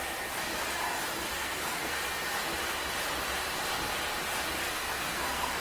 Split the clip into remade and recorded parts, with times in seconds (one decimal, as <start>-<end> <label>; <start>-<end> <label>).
0.0-1.3 recorded; 1.3-2.0 remade; 2.0-4.6 recorded; 4.6-5.6 remade